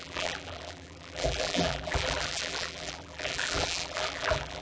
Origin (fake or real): fake